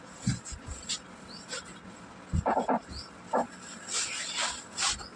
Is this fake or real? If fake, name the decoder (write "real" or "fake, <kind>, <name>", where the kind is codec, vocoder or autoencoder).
real